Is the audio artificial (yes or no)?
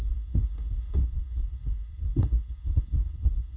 yes